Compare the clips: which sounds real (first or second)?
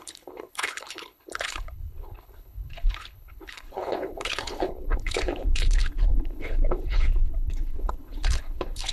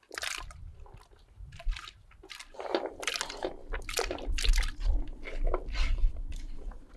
second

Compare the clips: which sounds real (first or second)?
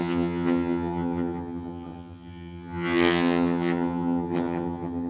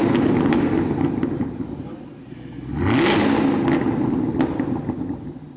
second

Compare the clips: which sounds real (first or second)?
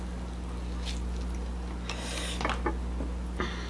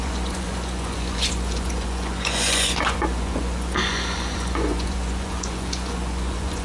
first